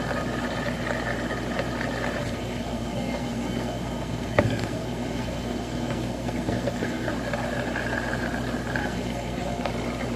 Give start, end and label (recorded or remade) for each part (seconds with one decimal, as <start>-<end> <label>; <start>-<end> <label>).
0.0-2.2 recorded; 2.2-7.1 remade; 7.1-8.8 recorded; 8.8-9.7 remade; 9.7-10.2 recorded